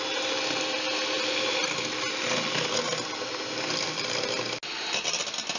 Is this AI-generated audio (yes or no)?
no